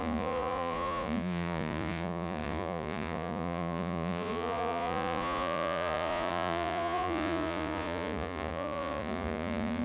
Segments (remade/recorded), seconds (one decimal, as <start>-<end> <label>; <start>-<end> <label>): 0.0-9.8 remade

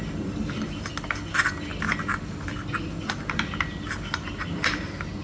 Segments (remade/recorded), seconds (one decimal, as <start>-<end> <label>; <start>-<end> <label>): 0.0-5.2 recorded